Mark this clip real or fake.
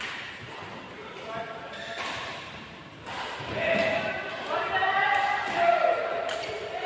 fake